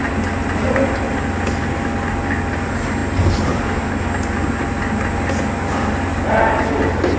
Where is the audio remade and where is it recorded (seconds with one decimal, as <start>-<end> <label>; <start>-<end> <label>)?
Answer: 0.0-7.2 recorded